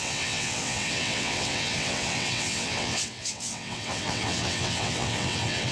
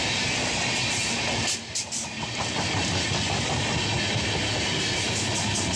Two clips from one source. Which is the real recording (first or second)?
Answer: second